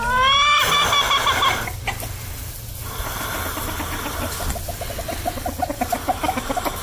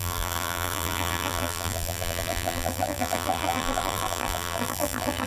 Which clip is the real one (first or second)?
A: first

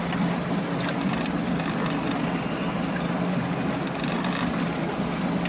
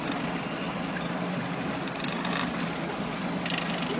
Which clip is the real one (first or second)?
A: first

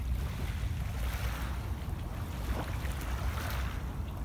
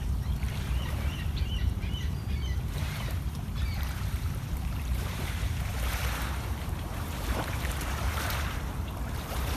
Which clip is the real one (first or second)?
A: first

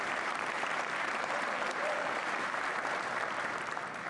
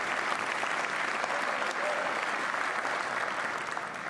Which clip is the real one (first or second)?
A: second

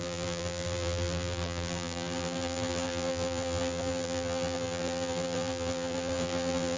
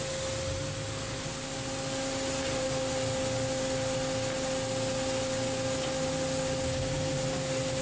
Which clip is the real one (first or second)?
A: second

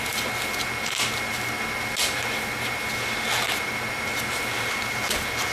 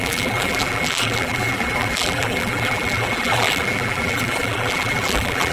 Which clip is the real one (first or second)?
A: first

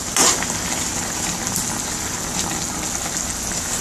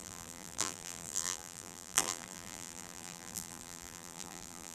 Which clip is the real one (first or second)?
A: first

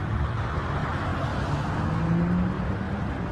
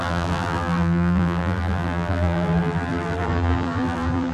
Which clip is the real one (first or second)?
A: first